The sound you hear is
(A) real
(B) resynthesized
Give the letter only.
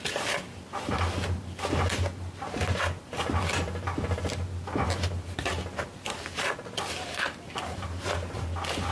A